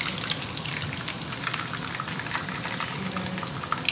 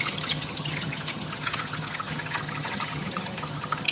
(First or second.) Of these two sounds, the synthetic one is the second